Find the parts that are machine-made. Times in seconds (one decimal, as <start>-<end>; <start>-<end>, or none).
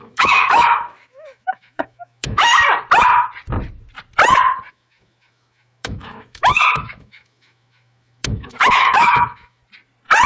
0.0-2.5; 4.7-9.6